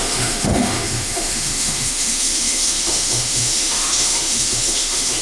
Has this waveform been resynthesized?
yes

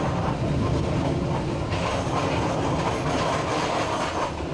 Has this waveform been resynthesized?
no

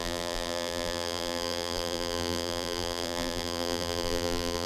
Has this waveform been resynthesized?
yes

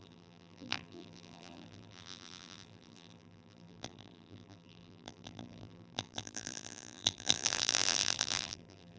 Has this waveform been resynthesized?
yes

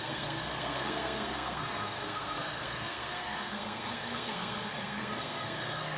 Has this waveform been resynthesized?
yes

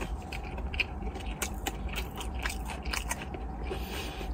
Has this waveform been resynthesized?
yes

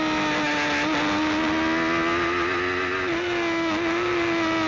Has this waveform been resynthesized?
no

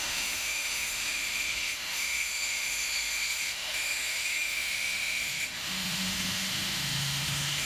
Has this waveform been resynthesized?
yes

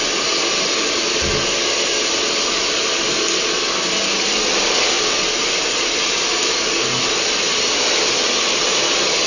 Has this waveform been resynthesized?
no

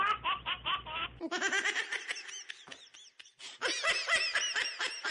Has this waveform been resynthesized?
no